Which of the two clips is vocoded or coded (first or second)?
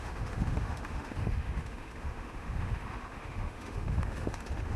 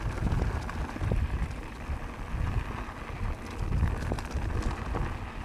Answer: first